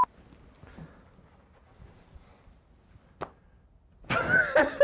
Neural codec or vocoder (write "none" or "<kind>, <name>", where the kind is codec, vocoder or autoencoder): none